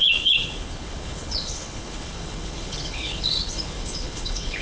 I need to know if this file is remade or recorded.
remade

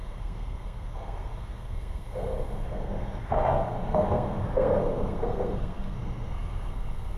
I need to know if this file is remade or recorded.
remade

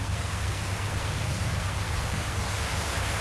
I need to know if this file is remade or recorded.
remade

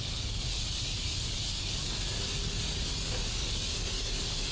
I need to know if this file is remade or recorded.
remade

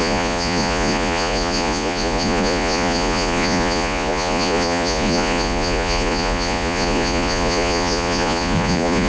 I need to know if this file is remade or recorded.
remade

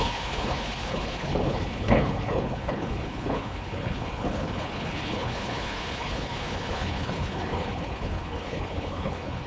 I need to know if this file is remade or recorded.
remade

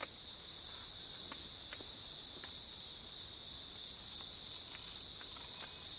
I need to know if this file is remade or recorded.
recorded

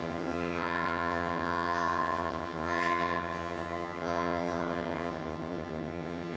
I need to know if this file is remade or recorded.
remade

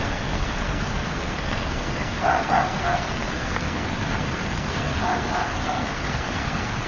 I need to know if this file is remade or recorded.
remade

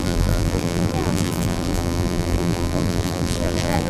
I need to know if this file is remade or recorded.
remade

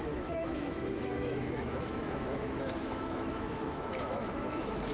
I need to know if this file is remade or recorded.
remade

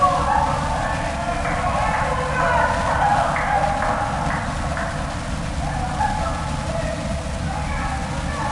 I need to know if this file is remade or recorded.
recorded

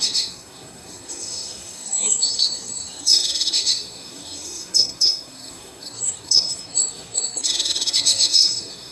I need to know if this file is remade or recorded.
remade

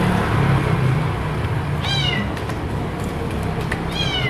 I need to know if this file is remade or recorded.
recorded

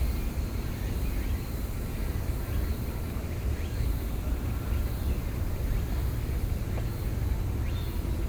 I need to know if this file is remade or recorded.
recorded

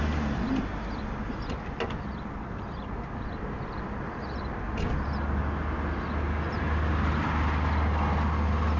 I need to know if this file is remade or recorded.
recorded